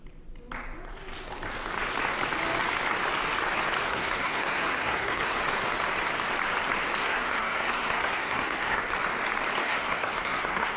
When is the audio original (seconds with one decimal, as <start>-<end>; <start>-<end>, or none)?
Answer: 0.0-3.9; 5.4-7.0; 8.9-9.6